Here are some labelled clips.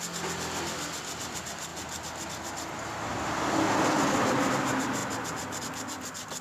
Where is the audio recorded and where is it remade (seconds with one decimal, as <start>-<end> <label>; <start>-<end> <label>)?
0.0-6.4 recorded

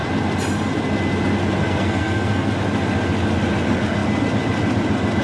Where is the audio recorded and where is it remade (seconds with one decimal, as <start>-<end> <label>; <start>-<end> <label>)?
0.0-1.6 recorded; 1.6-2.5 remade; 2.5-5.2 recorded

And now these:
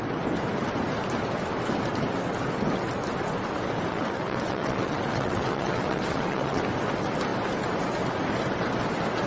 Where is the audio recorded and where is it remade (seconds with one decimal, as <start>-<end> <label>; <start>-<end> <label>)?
0.0-3.9 recorded; 3.9-6.6 remade; 6.6-9.3 recorded